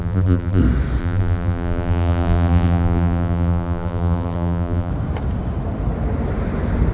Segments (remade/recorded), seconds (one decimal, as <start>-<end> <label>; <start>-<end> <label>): 0.0-0.6 remade; 0.6-1.0 recorded; 1.0-4.9 remade; 4.9-6.9 recorded